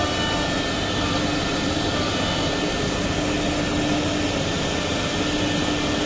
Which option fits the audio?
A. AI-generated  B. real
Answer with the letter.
B